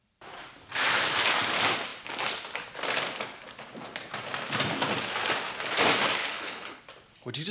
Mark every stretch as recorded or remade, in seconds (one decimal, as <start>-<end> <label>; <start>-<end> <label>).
0.0-6.2 recorded; 6.2-6.8 remade; 6.8-7.5 recorded